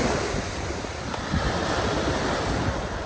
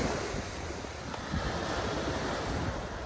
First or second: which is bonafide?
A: second